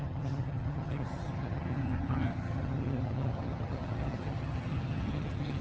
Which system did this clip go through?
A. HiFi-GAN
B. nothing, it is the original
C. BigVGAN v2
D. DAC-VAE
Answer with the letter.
A